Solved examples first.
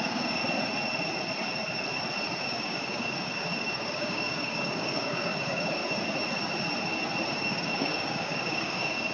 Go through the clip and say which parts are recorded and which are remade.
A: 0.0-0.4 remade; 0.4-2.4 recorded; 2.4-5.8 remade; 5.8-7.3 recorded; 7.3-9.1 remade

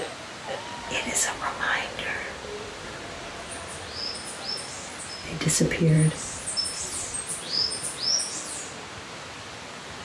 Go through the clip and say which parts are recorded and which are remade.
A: 0.0-10.0 recorded

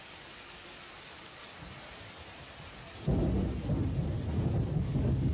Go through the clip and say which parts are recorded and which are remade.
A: 0.0-1.4 remade; 1.4-4.6 recorded; 4.6-5.3 remade

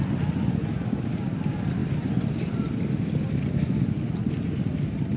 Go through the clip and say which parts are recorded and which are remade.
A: 0.0-5.2 recorded

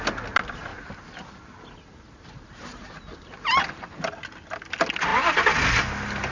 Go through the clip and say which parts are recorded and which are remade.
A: 0.0-6.3 recorded

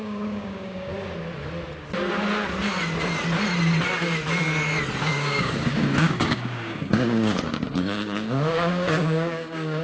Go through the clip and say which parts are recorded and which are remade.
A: 0.0-0.9 remade; 0.9-5.0 recorded; 5.0-9.8 remade